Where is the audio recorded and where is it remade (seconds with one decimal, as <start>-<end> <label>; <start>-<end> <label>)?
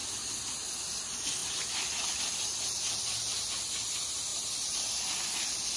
0.0-4.3 recorded; 4.3-5.1 remade; 5.1-5.8 recorded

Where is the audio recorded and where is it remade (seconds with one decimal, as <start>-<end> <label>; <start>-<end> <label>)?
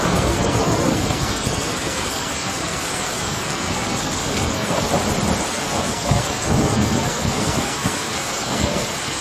0.0-4.9 remade; 4.9-5.5 recorded; 5.5-9.2 remade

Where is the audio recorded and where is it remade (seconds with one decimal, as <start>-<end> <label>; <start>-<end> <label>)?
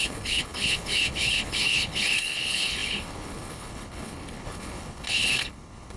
0.0-6.0 remade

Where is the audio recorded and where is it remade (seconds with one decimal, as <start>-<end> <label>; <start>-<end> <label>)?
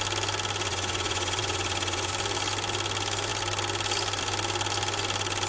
0.0-0.7 recorded; 0.7-2.1 remade; 2.1-5.5 recorded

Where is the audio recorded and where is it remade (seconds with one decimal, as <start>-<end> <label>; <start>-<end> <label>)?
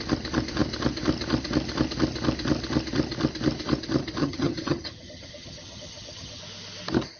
0.0-4.2 recorded; 4.2-6.4 remade; 6.4-7.2 recorded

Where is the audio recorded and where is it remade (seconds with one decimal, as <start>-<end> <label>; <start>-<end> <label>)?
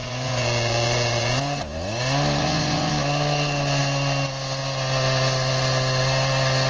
0.0-1.6 remade; 1.6-2.4 recorded; 2.4-2.9 remade; 2.9-6.7 recorded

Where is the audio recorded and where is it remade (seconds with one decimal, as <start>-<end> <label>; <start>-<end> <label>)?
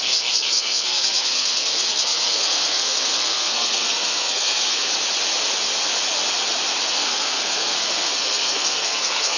0.0-4.9 remade; 4.9-6.9 recorded; 6.9-9.4 remade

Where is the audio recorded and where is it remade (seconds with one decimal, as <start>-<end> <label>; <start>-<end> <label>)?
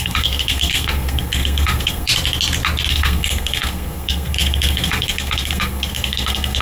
0.0-2.1 remade; 2.1-2.9 recorded; 2.9-6.6 remade